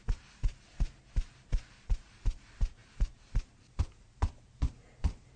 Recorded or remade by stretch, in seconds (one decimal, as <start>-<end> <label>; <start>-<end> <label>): 0.0-2.8 recorded; 2.8-5.4 remade